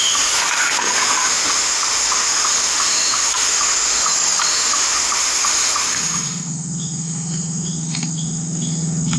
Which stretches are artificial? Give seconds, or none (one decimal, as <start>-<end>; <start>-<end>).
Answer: 0.0-4.0; 4.5-9.2